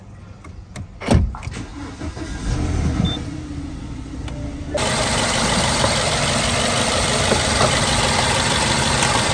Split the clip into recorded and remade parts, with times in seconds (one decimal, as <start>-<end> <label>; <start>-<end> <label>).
0.0-1.7 remade; 1.7-5.5 recorded; 5.5-9.3 remade